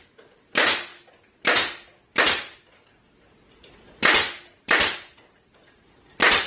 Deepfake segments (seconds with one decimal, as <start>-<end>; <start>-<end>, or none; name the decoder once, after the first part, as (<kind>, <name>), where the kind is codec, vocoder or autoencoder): none